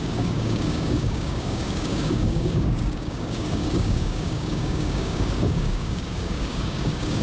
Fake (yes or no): yes